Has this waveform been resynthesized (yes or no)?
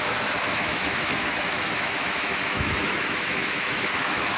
yes